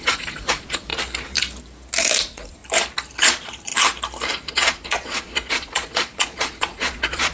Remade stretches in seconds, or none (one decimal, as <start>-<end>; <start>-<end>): 0.0-0.9; 2.2-2.6; 3.2-3.7; 4.5-7.3